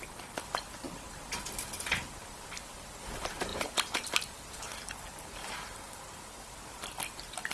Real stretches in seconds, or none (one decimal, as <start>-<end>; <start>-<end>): 0.0-3.5